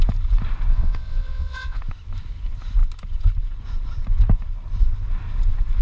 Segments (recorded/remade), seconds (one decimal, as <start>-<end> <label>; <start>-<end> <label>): 0.0-0.7 recorded; 0.7-1.8 remade; 1.8-5.8 recorded